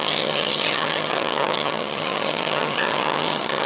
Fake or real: fake